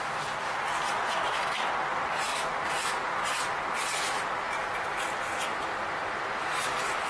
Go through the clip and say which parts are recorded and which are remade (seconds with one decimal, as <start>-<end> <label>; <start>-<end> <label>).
0.0-7.1 recorded